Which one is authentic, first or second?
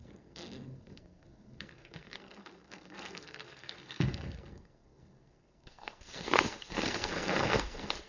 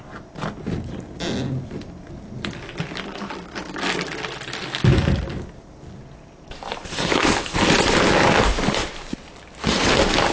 second